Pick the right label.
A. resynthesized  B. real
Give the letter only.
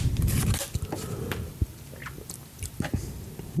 B